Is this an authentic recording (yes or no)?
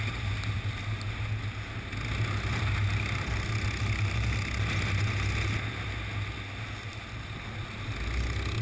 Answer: yes